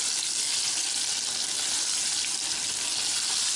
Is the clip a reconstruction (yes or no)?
no